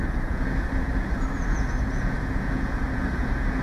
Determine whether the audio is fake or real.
fake